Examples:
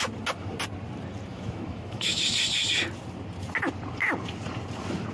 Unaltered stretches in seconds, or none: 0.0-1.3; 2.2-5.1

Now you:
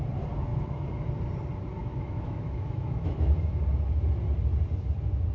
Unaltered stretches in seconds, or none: 0.0-0.5; 1.1-1.8; 3.6-5.3